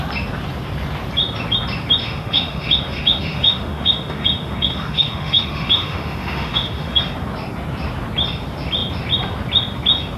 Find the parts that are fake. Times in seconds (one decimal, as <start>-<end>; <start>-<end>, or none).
2.0-7.0